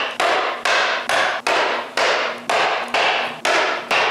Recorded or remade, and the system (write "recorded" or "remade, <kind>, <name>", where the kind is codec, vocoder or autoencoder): recorded